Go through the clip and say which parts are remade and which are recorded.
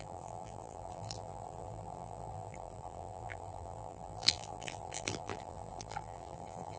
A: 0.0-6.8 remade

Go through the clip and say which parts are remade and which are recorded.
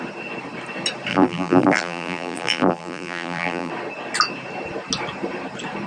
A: 0.0-1.1 recorded; 1.1-3.7 remade; 3.7-5.9 recorded